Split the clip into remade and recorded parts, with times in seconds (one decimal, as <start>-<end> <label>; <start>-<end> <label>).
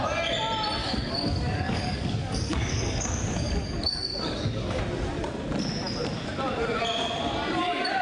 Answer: 0.0-0.8 recorded; 0.8-4.8 remade; 4.8-8.0 recorded